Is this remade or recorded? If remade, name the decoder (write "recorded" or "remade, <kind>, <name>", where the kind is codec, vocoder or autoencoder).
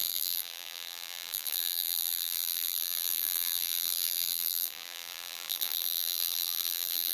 remade, vocoder, BigVGAN v2